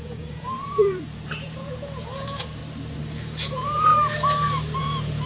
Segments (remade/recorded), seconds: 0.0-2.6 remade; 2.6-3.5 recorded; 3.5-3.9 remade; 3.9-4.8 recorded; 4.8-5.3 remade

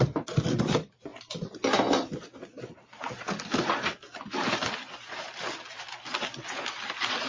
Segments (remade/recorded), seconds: 0.0-7.3 recorded

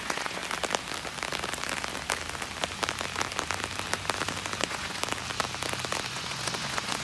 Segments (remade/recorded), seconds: 0.0-0.4 remade; 0.4-4.6 recorded; 4.6-5.0 remade; 5.0-6.1 recorded; 6.1-7.0 remade